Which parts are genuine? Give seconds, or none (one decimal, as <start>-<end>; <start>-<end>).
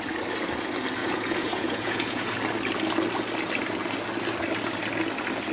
0.0-1.0; 2.3-5.5